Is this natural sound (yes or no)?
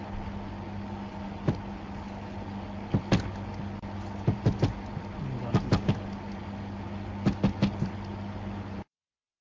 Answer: yes